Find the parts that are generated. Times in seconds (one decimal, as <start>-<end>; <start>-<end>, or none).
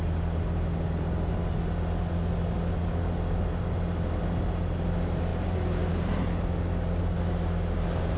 none